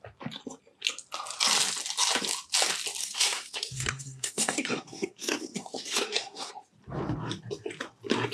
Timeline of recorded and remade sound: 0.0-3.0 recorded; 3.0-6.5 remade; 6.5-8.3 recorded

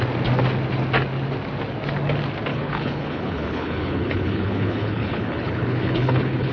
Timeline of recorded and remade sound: 0.0-2.5 recorded; 2.5-6.5 remade

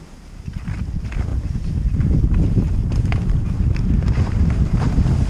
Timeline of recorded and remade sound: 0.0-1.3 recorded; 1.3-4.5 remade; 4.5-5.3 recorded

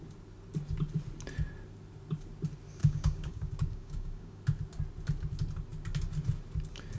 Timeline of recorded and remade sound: 0.0-2.8 recorded; 2.8-4.4 remade; 4.4-7.0 recorded

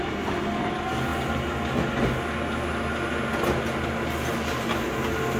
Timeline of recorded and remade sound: 0.0-5.4 recorded

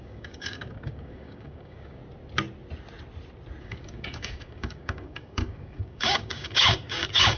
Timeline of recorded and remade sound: 0.0-2.0 remade; 2.0-3.6 recorded; 3.6-7.4 remade

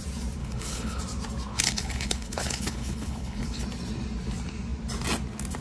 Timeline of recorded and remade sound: 0.0-0.4 recorded; 0.4-1.0 remade; 1.0-1.5 recorded; 1.5-3.6 remade; 3.6-5.6 recorded